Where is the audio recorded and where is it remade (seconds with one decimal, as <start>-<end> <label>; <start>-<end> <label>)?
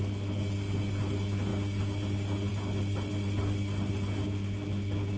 0.0-5.2 recorded